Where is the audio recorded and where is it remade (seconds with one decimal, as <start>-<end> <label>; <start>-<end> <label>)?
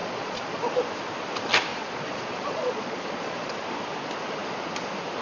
0.0-0.6 remade; 0.6-1.7 recorded; 1.7-3.5 remade; 3.5-5.2 recorded